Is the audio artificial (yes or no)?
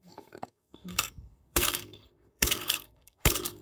yes